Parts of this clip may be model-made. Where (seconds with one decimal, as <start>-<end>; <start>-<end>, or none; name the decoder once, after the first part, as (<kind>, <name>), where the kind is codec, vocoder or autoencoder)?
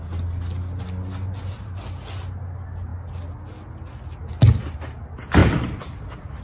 5.4-6.0 (vocoder, BigVGAN v2)